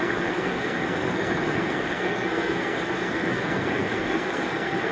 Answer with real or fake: fake